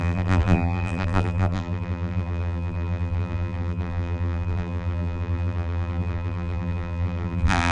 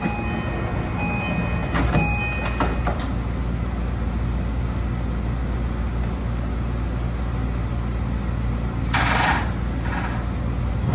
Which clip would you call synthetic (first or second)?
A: first